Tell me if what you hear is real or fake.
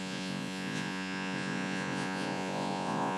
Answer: fake